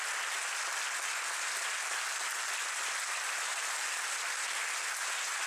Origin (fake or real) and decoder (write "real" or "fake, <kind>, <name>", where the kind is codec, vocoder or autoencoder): real